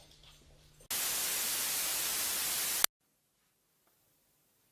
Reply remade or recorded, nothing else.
recorded